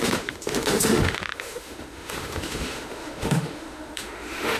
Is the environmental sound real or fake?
fake